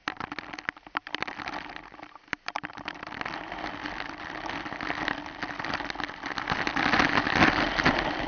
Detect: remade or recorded recorded